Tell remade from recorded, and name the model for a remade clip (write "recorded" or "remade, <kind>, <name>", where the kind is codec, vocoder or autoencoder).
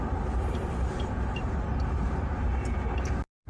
remade, vocoder, BigVGAN v2